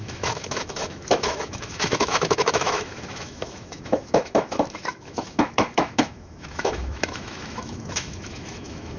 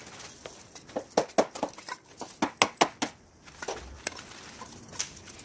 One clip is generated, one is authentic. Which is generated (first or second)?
first